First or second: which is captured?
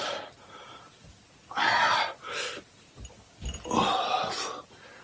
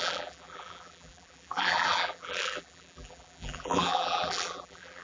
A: first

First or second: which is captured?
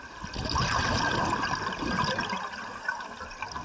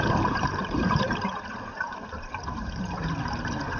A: first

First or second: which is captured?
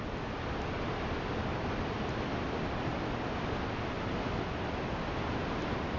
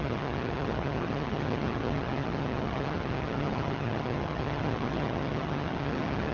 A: first